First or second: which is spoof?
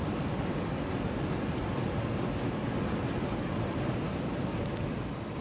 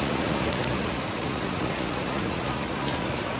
second